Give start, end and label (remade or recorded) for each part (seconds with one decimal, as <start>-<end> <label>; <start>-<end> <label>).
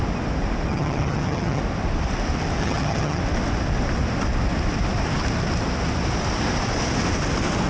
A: 0.0-0.7 recorded; 0.7-1.6 remade; 1.6-2.6 recorded; 2.6-3.2 remade; 3.2-7.7 recorded